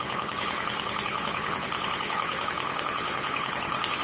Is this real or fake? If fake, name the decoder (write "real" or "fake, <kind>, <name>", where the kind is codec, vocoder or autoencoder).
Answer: fake, codec, HILCodec